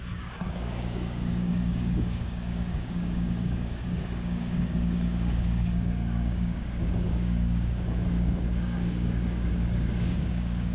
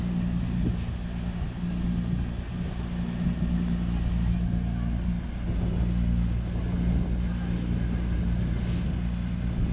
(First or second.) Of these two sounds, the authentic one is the second